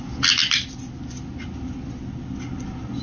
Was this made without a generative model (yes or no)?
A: yes